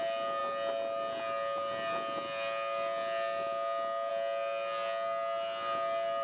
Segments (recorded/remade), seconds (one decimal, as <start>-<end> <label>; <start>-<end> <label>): 0.0-6.2 recorded